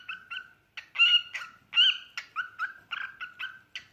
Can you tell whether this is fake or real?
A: real